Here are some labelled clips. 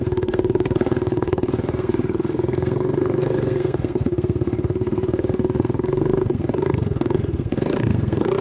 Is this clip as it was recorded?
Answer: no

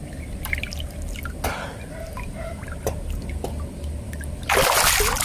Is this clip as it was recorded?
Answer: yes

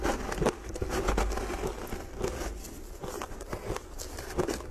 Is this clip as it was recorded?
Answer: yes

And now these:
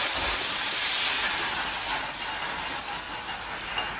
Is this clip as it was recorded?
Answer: yes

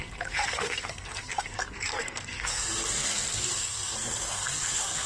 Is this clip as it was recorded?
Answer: no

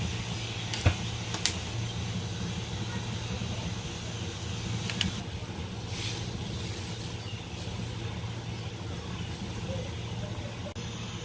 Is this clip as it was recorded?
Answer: yes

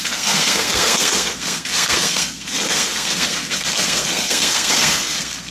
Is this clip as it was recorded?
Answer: no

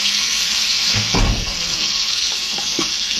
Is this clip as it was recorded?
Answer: no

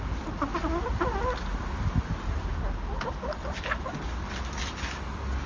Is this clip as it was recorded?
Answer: yes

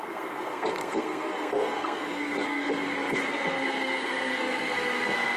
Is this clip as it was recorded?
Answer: no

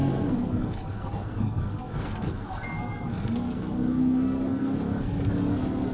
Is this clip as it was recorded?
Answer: no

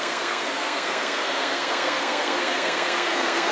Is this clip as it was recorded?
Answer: no